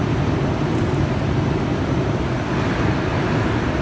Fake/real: real